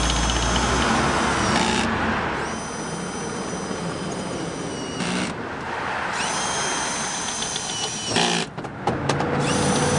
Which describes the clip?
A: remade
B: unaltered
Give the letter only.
B